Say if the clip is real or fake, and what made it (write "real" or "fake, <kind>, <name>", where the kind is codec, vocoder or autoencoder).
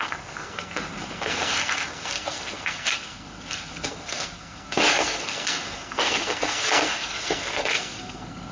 fake, codec, SNAC